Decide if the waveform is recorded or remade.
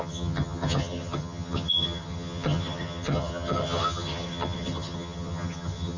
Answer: remade